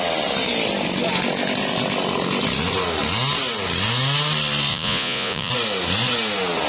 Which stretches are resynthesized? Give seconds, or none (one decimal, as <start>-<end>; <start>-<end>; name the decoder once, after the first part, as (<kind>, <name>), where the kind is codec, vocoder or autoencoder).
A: 4.7-5.5 (vocoder, Vocos)